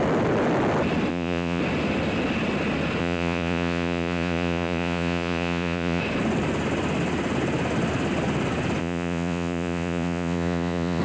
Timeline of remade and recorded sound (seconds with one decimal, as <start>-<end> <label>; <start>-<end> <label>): 0.0-1.1 recorded; 1.1-1.6 remade; 1.6-3.0 recorded; 3.0-6.0 remade; 6.0-8.8 recorded; 8.8-11.0 remade